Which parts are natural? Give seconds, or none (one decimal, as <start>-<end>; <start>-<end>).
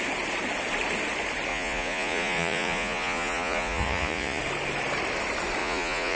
0.0-1.5; 4.4-5.6